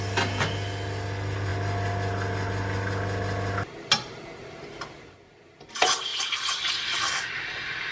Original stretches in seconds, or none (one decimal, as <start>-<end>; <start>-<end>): 0.0-7.9